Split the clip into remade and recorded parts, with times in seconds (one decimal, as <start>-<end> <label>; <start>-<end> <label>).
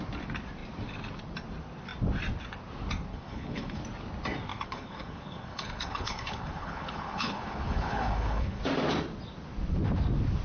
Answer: 0.0-3.1 recorded; 3.1-3.8 remade; 3.8-4.5 recorded; 4.5-8.6 remade; 8.6-10.4 recorded